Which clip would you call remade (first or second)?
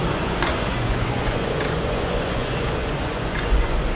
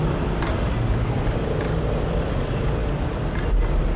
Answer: first